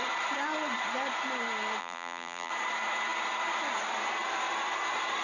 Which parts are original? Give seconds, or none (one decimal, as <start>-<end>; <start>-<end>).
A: 0.0-1.8; 2.5-5.2